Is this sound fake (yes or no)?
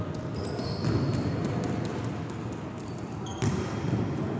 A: no